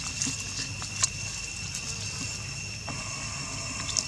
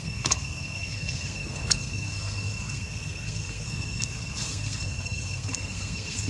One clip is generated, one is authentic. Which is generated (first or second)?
second